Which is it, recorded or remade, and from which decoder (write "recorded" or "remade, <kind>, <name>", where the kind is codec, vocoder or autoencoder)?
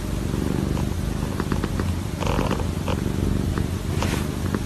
remade, vocoder, BigVGAN v2